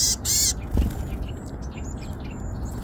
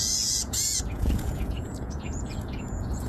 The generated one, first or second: second